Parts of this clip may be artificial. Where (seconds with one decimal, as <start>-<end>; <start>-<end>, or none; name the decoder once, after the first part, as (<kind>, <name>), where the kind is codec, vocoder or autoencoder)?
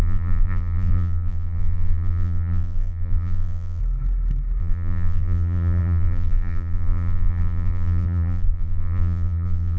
0.0-3.8 (vocoder, BigVGAN v2); 4.6-9.8